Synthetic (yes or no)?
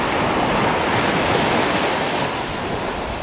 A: no